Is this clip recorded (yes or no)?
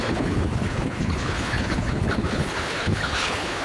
no